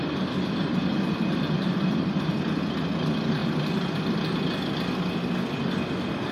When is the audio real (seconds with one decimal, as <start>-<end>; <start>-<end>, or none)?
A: 0.0-1.6; 2.3-6.3